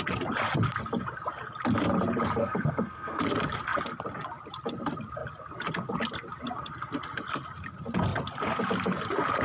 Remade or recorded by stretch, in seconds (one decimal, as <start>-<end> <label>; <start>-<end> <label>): 0.0-2.4 recorded; 2.4-3.2 remade; 3.2-9.4 recorded